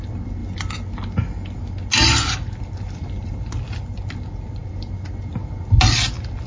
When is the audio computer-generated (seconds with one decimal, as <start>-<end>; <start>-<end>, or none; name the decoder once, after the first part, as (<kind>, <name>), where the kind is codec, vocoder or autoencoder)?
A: none